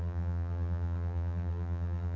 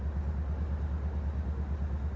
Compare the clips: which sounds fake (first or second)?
first